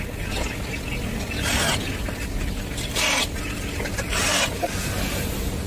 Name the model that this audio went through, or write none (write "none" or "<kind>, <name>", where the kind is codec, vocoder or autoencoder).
none